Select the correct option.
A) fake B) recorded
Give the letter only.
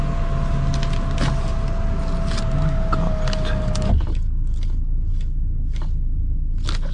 B